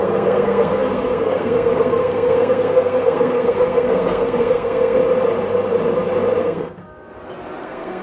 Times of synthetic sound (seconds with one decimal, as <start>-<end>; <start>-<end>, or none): 0.0-5.0; 6.4-6.9; 7.6-8.0